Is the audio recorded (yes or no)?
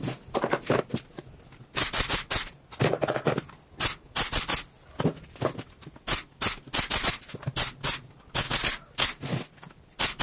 yes